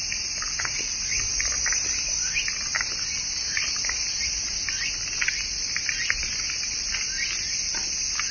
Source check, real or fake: real